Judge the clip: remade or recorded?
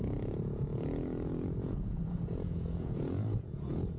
remade